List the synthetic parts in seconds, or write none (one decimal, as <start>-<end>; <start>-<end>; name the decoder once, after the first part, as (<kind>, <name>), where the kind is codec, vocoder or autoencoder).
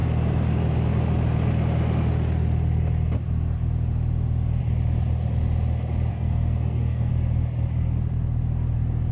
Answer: 6.1-7.1 (codec, SNAC)